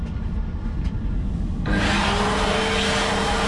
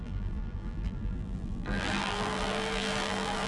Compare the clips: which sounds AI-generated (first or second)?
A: second